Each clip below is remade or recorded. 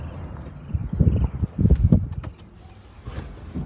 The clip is recorded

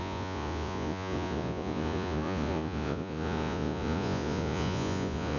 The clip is remade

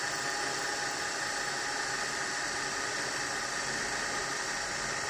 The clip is remade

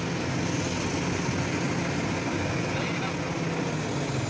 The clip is recorded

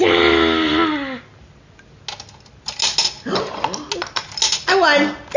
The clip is recorded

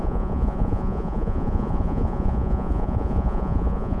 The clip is remade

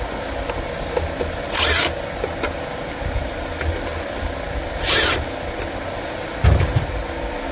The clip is recorded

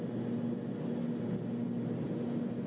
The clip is recorded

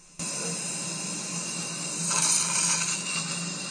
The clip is recorded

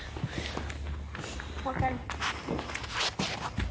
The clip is recorded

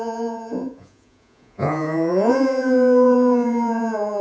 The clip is remade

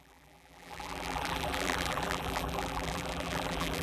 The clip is remade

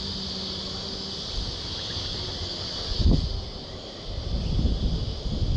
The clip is recorded